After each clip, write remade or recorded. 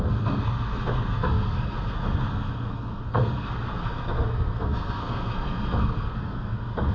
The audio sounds remade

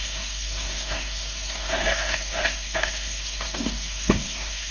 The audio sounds remade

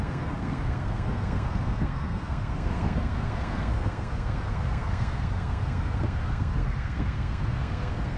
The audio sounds remade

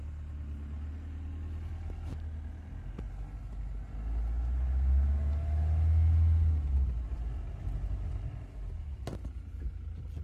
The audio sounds recorded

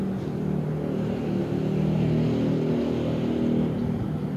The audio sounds recorded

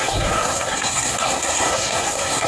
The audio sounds remade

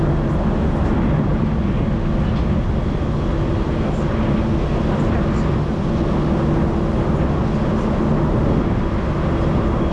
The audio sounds recorded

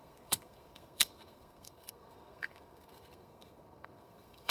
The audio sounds remade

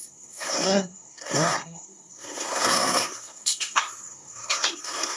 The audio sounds remade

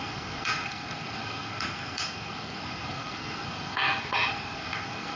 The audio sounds remade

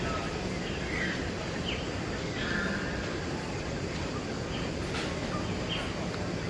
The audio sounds recorded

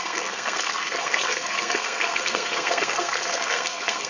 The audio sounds remade